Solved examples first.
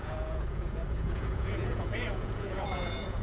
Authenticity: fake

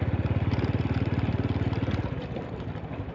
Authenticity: real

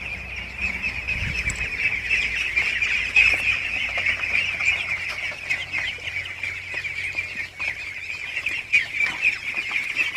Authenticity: real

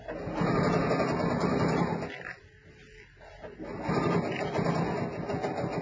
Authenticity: real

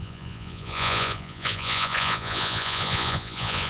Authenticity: fake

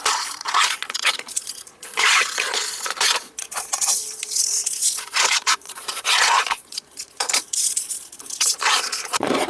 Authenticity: fake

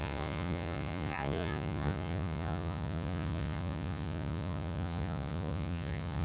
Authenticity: fake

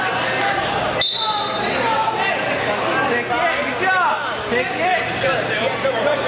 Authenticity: real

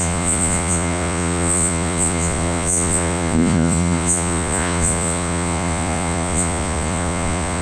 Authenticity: fake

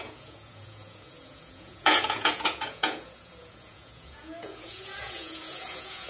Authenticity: fake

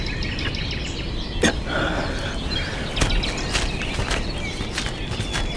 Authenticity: real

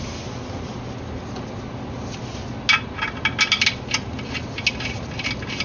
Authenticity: real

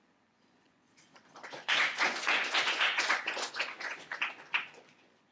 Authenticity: fake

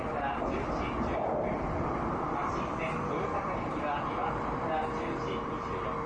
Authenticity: real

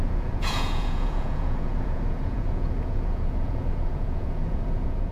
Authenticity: fake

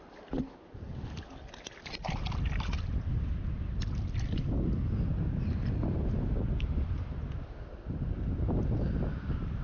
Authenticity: real